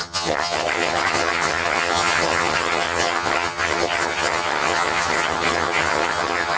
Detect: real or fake fake